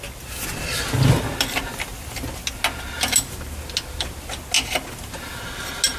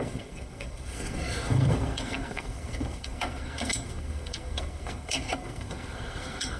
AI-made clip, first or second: second